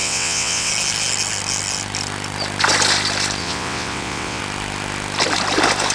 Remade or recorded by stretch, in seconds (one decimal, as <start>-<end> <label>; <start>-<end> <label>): 0.0-0.7 remade; 0.7-3.4 recorded; 3.4-4.4 remade; 4.4-5.9 recorded